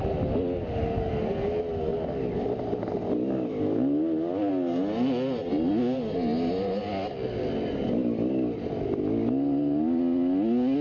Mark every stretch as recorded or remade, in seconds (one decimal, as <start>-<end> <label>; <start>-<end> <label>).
0.0-10.8 recorded